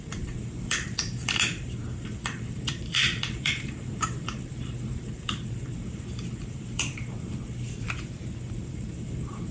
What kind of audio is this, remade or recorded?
remade